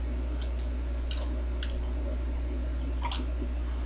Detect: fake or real real